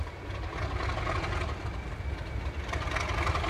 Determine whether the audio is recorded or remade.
recorded